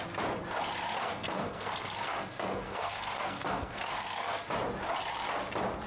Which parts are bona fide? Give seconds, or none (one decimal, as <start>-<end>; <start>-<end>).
0.0-1.0; 4.5-5.9